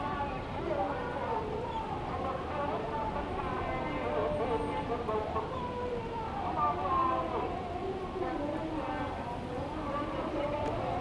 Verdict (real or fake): real